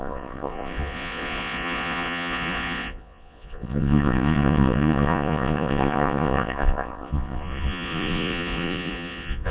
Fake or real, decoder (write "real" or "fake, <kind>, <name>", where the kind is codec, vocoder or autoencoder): fake, vocoder, Vocos